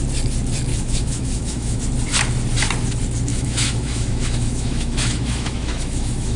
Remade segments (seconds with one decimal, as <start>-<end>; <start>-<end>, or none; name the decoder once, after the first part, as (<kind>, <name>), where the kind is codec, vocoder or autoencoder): 0.7-1.8 (autoencoder, DAC-VAE); 3.3-6.4